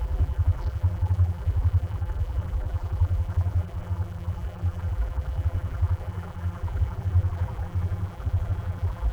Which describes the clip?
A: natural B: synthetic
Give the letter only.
B